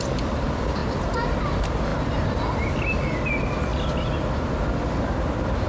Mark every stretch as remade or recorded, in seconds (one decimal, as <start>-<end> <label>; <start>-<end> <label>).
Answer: 0.0-5.7 recorded